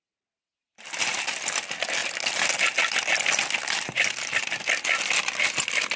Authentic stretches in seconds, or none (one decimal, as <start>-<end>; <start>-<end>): 0.0-6.0